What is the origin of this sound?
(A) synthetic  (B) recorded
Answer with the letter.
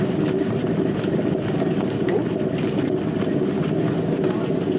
B